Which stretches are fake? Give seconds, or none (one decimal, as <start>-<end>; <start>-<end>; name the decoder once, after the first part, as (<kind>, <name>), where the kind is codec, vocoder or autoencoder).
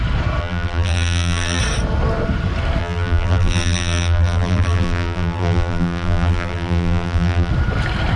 0.4-1.6 (vocoder, BigVGAN v2); 2.8-7.5